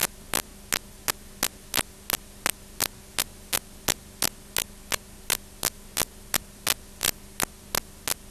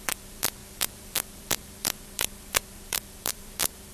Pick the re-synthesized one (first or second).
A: second